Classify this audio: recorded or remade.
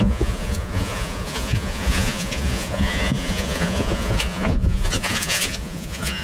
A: remade